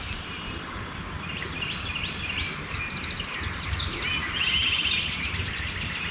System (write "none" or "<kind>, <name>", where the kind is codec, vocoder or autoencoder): none